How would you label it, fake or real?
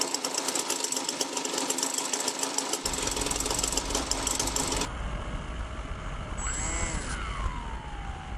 real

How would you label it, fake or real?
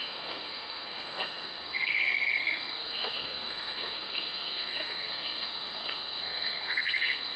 fake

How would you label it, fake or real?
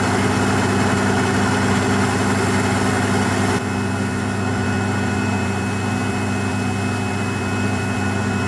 real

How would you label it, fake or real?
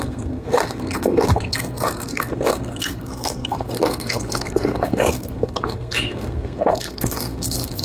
fake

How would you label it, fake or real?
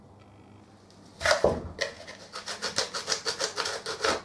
real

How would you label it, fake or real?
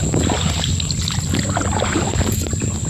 real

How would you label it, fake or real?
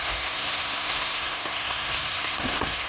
fake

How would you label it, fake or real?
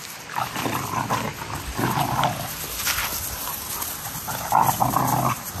real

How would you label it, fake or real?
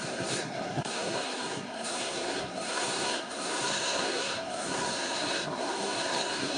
fake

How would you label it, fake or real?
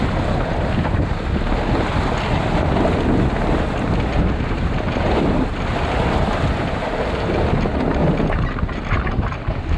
real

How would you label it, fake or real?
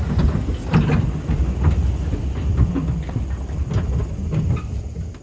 real